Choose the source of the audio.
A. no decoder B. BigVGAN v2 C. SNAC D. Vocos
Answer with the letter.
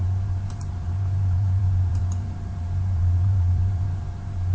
B